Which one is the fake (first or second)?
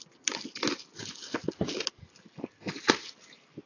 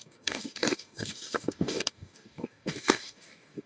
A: second